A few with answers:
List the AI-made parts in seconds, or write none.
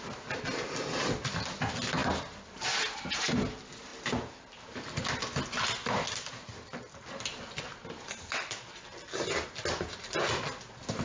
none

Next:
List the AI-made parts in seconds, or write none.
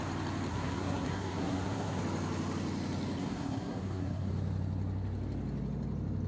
0.5-2.0 (codec, SNAC); 3.2-4.3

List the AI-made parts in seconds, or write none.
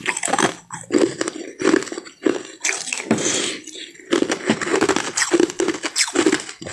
none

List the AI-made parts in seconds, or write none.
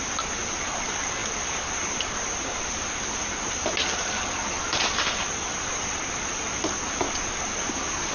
none